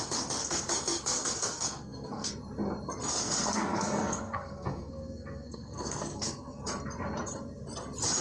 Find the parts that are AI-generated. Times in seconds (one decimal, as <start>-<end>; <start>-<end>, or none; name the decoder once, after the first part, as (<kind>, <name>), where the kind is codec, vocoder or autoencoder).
0.4-2.3 (codec, SNAC); 3.1-6.6